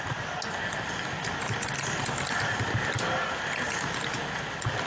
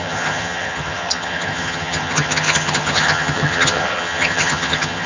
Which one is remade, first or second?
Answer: second